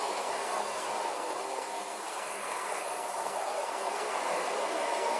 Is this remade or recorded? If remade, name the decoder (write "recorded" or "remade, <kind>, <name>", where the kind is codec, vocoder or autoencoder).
remade, codec, SNAC